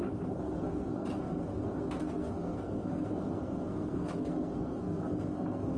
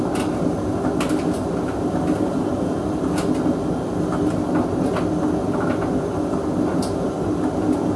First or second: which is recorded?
second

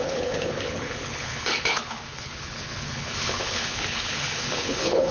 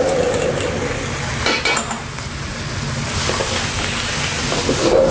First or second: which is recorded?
second